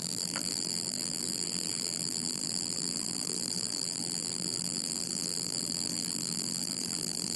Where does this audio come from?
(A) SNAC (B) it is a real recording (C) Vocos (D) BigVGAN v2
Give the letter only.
D